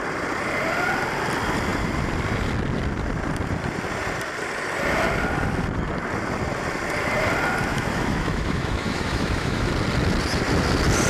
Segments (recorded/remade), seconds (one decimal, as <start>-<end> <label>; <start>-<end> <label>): 0.0-7.7 recorded; 7.7-9.7 remade; 9.7-11.1 recorded